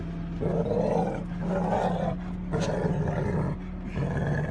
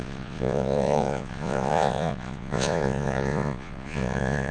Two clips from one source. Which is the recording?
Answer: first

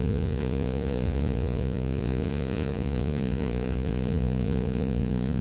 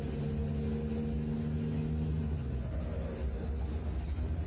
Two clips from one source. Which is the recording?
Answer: second